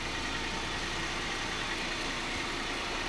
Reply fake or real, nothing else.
real